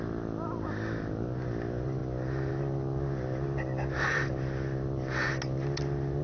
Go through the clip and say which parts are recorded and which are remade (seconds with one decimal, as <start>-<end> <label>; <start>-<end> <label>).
0.0-6.2 recorded